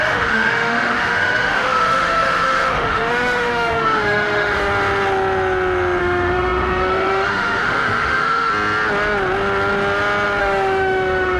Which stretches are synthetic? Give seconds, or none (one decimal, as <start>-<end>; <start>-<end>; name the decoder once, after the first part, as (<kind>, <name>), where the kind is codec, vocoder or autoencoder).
0.0-4.7 (autoencoder, DAC-VAE); 6.0-8.5; 10.4-11.4

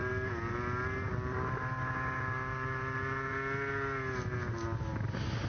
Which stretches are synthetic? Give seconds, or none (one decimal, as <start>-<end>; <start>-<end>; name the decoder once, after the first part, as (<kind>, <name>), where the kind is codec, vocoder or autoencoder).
none

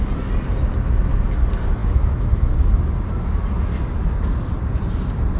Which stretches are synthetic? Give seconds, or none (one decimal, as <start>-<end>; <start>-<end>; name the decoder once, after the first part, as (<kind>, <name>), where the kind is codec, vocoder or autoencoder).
1.8-2.5 (autoencoder, DAC-VAE)